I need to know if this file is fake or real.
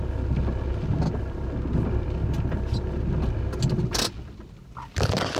real